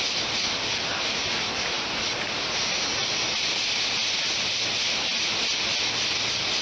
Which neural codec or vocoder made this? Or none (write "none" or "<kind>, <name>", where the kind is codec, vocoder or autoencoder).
none